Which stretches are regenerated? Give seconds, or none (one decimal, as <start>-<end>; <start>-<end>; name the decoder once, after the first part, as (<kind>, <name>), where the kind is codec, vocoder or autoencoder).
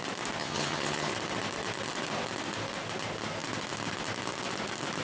0.4-1.1 (vocoder, HiFi-GAN)